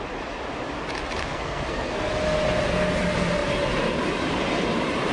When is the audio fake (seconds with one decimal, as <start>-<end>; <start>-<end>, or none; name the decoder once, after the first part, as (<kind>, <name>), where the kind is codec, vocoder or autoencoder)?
1.2-2.1 (codec, SNAC)

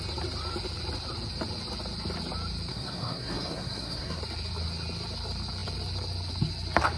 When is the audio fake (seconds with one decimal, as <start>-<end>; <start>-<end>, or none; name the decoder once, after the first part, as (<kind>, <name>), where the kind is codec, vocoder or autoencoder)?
2.7-4.2 (codec, SNAC)

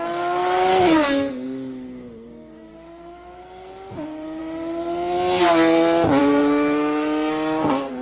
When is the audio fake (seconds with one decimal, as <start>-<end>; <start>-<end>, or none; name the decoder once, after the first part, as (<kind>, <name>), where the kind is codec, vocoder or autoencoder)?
0.0-4.4 (codec, SNAC); 6.2-8.0

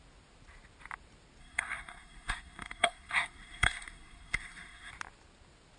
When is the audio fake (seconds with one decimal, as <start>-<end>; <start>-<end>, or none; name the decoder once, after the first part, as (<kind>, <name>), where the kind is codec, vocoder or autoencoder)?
1.4-4.9 (codec, SNAC)